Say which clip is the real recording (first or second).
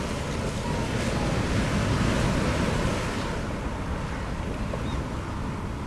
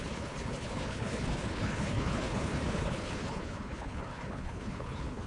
first